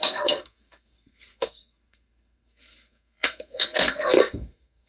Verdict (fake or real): fake